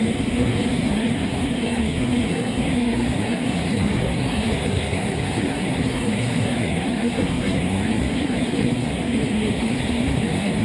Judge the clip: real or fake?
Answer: fake